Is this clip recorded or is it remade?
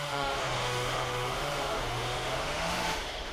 remade